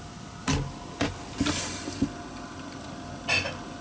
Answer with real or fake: real